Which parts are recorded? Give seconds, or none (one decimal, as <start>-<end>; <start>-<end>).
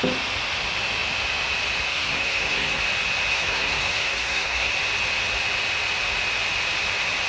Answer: 0.0-1.9; 2.8-3.3; 4.7-7.3